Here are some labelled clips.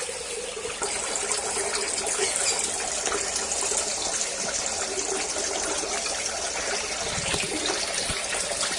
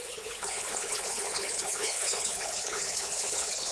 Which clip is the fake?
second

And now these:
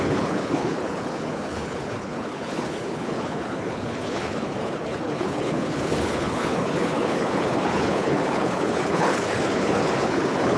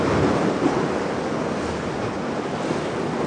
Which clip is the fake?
first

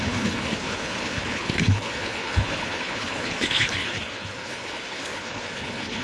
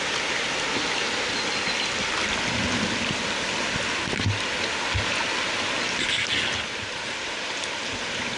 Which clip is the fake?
first